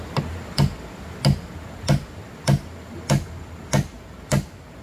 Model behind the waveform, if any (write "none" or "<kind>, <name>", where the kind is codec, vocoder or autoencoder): none